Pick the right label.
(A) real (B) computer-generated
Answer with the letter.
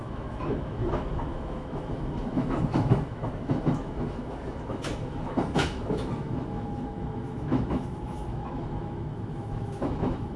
B